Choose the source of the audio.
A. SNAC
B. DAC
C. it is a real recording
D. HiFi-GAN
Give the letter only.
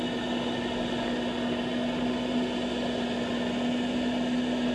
C